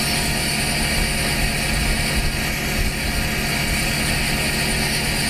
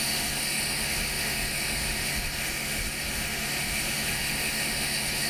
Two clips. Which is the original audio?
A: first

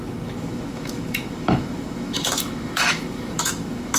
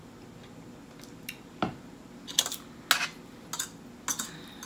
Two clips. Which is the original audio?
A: second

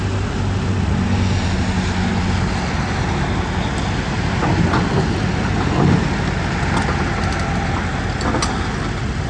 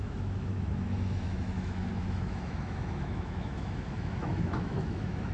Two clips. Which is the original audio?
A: first